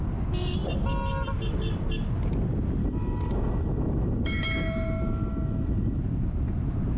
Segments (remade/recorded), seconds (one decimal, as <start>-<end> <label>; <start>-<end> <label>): 0.0-2.8 recorded; 2.8-6.0 remade; 6.0-7.0 recorded